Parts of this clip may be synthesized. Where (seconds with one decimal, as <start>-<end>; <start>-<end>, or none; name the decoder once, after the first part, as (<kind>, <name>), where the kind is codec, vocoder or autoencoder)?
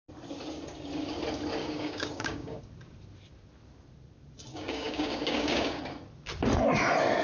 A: 1.6-2.6 (codec, DAC); 4.5-5.8